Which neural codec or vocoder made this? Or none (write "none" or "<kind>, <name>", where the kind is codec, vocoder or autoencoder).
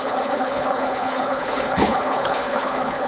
codec, HILCodec